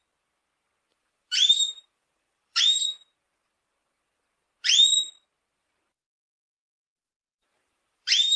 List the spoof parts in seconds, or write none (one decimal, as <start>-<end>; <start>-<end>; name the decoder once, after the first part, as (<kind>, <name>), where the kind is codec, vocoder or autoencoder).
0.9-2.6 (vocoder, BigVGAN v2); 7.3-8.4